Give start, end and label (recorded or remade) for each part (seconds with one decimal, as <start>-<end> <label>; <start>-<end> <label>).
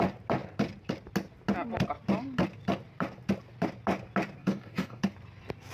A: 0.0-4.4 recorded; 4.4-5.0 remade; 5.0-5.7 recorded